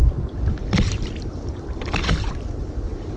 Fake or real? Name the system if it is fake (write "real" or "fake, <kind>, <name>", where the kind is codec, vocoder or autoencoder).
fake, vocoder, BigVGAN v2